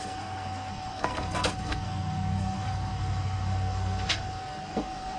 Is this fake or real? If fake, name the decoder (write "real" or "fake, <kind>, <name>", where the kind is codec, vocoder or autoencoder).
fake, codec, SNAC